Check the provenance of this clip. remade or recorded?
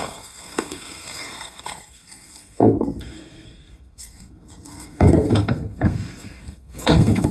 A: remade